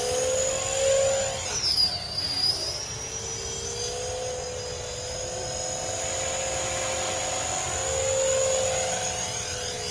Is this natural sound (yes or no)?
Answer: yes